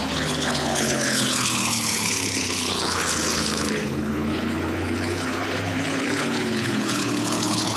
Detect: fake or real fake